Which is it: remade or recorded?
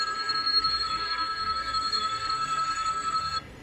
remade